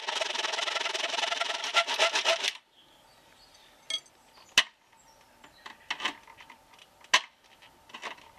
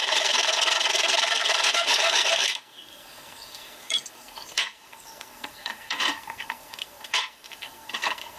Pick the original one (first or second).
first